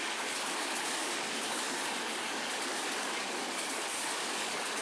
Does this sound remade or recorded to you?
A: remade